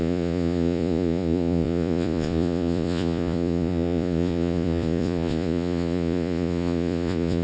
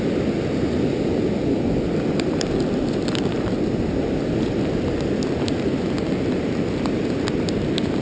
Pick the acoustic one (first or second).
second